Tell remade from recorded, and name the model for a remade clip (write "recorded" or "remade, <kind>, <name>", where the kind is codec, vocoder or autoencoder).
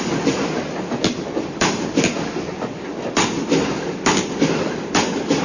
recorded